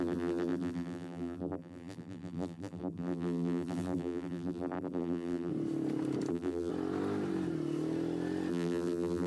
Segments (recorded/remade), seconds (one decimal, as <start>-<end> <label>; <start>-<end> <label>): 0.0-5.5 remade; 5.5-6.3 recorded; 6.3-6.7 remade; 6.7-8.5 recorded; 8.5-9.3 remade